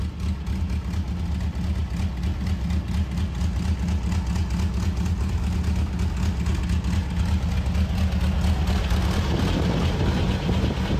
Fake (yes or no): no